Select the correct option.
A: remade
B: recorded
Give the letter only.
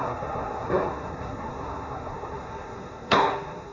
A